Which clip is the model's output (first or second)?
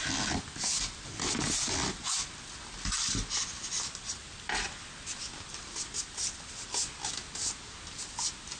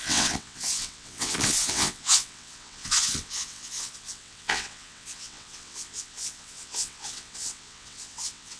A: second